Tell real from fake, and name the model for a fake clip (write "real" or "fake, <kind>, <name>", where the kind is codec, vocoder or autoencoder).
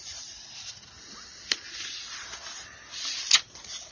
real